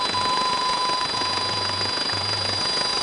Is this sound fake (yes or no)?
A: yes